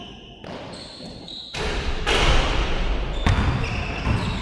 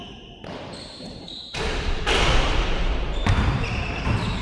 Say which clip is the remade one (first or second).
second